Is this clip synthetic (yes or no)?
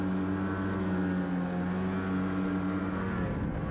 no